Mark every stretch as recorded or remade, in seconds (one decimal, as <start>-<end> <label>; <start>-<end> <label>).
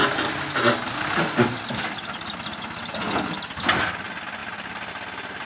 0.0-5.5 recorded